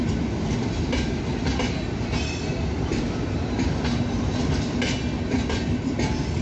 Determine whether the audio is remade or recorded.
recorded